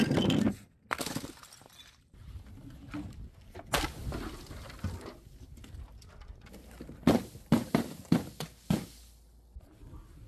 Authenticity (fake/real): real